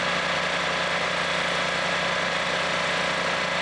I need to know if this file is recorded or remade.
recorded